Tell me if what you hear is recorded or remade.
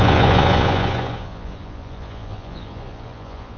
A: remade